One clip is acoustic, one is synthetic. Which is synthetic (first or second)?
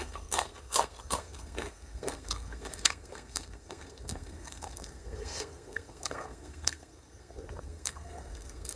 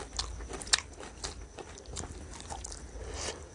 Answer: first